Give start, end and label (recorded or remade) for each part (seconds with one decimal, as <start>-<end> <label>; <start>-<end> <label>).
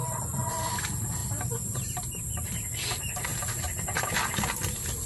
0.0-0.6 remade; 0.6-1.2 recorded; 1.2-2.2 remade; 2.2-3.3 recorded; 3.3-4.2 remade; 4.2-5.1 recorded